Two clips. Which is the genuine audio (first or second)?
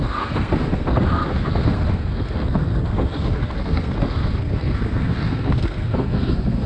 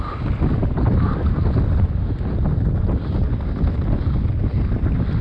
second